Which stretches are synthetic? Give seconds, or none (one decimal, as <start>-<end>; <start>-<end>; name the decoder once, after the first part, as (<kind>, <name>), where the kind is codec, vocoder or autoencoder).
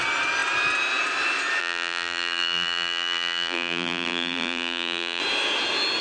1.6-5.2 (vocoder, BigVGAN v2)